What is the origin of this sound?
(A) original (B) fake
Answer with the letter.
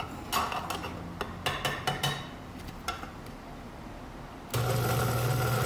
A